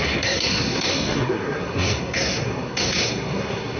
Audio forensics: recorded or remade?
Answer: remade